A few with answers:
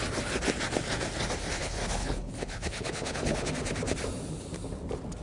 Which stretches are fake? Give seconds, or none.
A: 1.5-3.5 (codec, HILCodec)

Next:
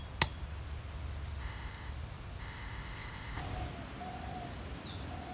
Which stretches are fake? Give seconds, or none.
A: 1.4-1.9 (codec, ZipCodec); 2.4-3.4

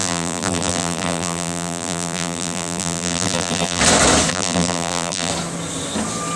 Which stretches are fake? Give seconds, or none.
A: 0.0-3.8 (vocoder, BigVGAN v2); 4.3-5.3

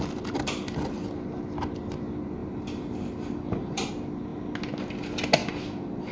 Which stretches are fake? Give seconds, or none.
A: 2.4-3.9 (vocoder, BigVGAN v2); 5.4-6.1

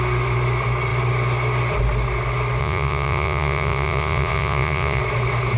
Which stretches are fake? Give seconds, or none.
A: 2.6-5.0 (vocoder, Vocos)